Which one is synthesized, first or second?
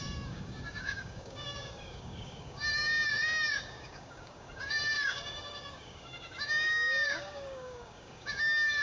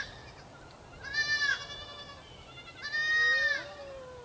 first